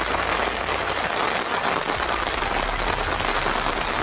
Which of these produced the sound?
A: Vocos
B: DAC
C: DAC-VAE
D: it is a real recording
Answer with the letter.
D